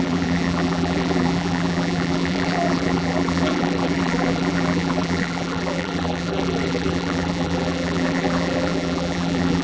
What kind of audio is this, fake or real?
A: fake